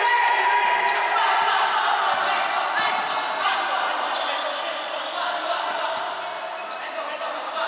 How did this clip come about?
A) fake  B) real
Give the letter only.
B